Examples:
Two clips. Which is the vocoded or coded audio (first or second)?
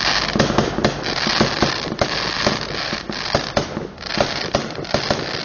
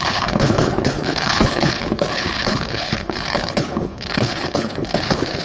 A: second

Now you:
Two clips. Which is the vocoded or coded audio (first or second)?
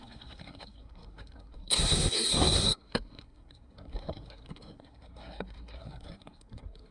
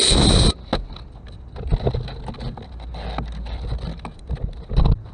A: first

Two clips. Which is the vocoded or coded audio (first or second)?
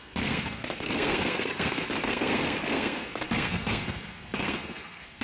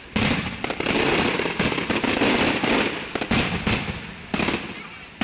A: first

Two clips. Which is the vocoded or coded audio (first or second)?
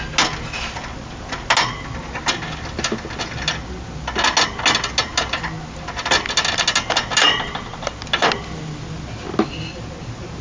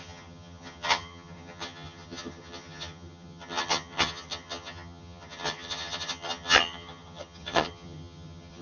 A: second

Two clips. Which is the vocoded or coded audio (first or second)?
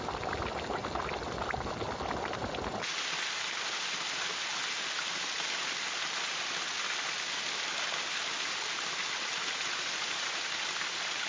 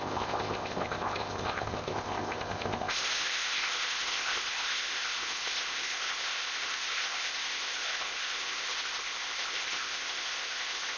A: second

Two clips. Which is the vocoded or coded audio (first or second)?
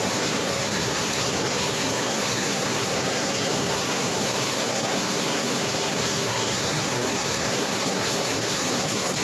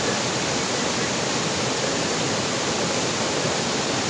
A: first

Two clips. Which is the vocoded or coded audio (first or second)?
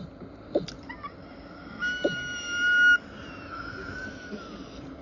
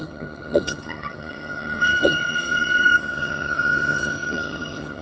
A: second